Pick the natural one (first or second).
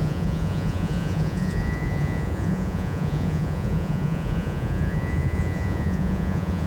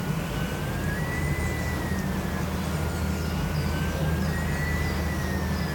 second